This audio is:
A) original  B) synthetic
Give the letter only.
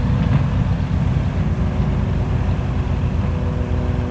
A